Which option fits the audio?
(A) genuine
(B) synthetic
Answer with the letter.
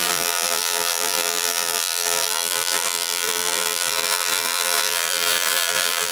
B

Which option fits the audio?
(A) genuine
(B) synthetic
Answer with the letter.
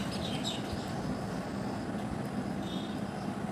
A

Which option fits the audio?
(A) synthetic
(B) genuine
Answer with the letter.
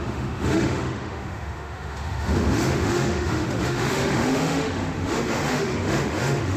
A